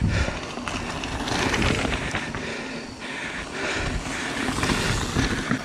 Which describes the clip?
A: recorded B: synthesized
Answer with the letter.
A